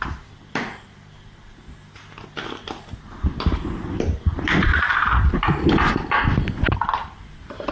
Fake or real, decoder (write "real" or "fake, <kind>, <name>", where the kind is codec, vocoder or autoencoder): real